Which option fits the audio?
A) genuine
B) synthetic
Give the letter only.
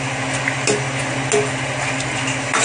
A